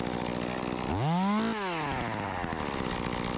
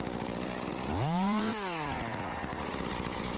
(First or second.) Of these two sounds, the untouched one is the first